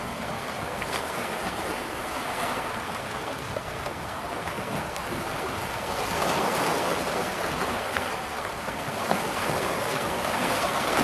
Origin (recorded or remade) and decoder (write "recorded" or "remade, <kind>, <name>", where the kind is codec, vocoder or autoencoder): remade, codec, SNAC